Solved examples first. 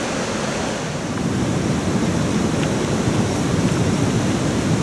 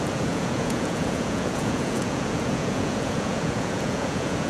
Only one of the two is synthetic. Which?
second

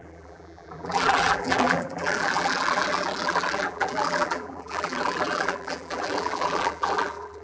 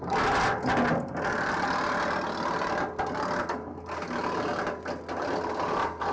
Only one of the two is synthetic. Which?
first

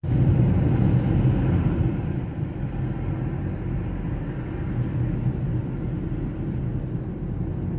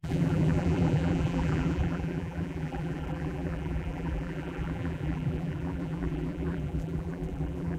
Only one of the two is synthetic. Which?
second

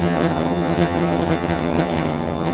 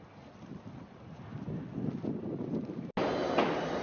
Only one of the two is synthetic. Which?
first